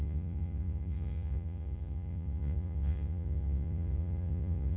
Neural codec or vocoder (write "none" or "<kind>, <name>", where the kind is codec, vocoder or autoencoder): vocoder, Vocos